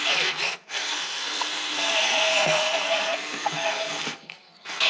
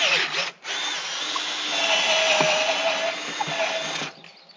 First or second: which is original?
second